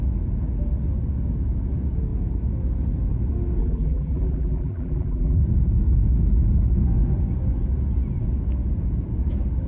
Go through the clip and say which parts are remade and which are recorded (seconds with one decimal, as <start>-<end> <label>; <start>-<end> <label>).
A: 0.0-3.6 recorded; 3.6-5.4 remade; 5.4-9.7 recorded